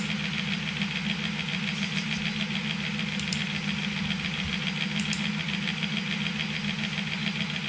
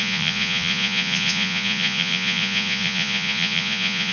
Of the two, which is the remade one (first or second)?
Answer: second